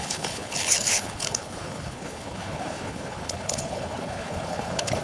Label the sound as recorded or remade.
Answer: remade